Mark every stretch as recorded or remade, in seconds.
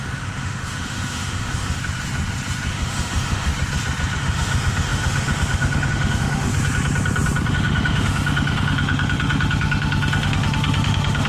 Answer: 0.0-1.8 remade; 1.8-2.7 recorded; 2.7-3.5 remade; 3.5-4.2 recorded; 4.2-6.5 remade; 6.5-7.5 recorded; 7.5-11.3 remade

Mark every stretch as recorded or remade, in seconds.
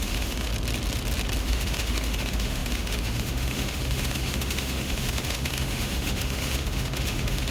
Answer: 0.0-0.5 remade; 0.5-1.4 recorded; 1.4-7.5 remade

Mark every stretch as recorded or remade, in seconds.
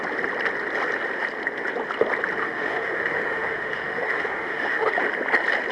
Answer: 0.0-2.4 recorded; 2.4-4.9 remade; 4.9-5.7 recorded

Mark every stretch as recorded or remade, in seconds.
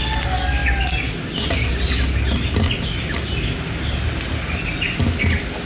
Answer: 0.0-5.7 recorded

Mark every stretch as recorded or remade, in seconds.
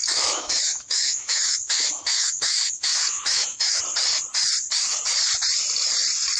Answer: 0.0-3.8 remade; 3.8-6.4 recorded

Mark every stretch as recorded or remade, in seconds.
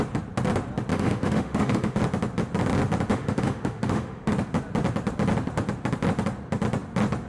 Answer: 0.0-0.9 recorded; 0.9-2.0 remade; 2.0-3.1 recorded; 3.1-4.3 remade; 4.3-7.3 recorded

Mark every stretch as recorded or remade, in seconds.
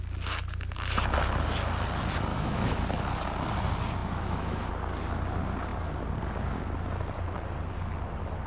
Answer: 0.0-2.3 recorded; 2.3-2.8 remade; 2.8-4.0 recorded; 4.0-4.7 remade; 4.7-8.5 recorded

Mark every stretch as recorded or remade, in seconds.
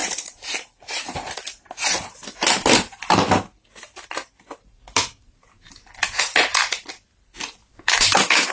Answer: 0.0-7.6 recorded; 7.6-8.5 remade